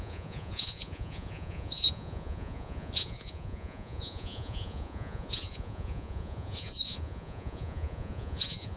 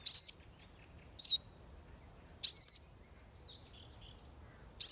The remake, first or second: first